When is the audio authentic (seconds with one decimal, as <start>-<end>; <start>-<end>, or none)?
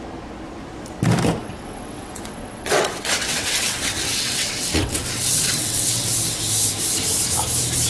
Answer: 0.0-1.4; 6.1-7.9